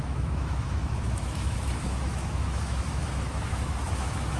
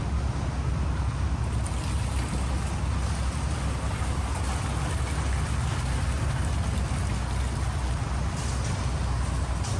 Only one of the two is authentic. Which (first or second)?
second